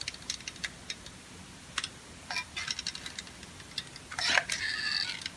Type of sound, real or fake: real